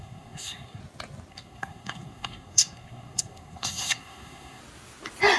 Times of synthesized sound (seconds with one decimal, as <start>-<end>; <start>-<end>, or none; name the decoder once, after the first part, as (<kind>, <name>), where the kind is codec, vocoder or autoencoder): 0.0-0.8 (codec, SNAC); 1.3-4.6